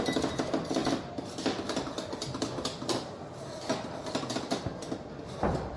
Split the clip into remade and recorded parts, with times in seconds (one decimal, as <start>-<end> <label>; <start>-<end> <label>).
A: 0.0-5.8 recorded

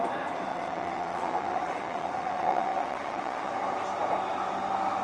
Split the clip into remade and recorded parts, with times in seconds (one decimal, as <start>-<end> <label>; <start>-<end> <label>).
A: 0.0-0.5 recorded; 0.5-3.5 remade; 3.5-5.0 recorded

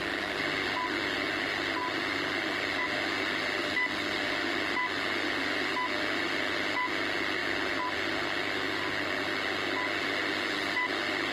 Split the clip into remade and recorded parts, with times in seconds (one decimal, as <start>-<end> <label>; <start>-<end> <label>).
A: 0.0-11.3 recorded

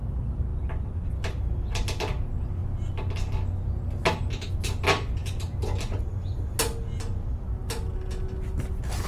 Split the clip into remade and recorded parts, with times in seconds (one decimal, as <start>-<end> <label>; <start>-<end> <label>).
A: 0.0-9.1 recorded

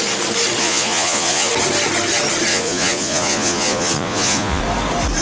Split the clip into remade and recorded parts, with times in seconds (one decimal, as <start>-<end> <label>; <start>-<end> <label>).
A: 0.0-0.6 recorded; 0.6-1.5 remade; 1.5-2.5 recorded; 2.5-4.6 remade; 4.6-5.2 recorded